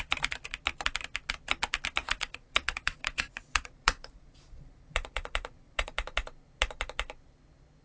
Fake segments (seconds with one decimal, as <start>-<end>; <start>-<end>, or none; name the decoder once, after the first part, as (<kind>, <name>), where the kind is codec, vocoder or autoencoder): 2.0-5.9 (vocoder, Vocos)

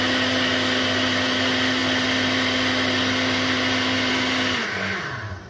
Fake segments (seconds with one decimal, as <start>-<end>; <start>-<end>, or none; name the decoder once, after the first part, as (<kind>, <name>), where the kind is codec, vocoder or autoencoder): none